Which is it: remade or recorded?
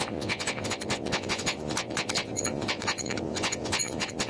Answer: remade